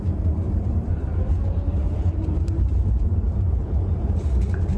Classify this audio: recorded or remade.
remade